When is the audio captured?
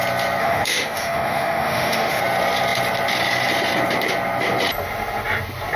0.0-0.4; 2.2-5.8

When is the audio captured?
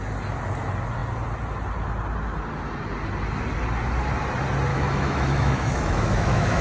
0.0-4.7